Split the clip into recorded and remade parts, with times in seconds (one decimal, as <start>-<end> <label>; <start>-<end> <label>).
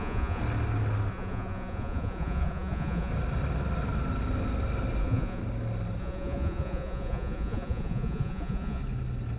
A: 0.0-0.4 remade; 0.4-1.1 recorded; 1.1-3.1 remade; 3.1-5.0 recorded; 5.0-5.4 remade; 5.4-6.0 recorded; 6.0-8.8 remade; 8.8-9.4 recorded